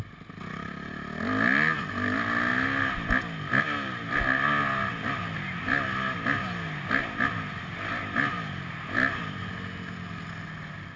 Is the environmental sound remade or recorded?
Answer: recorded